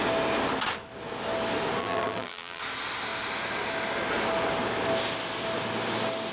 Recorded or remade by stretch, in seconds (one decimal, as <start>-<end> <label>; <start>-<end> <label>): 0.0-1.8 recorded; 1.8-2.6 remade; 2.6-6.3 recorded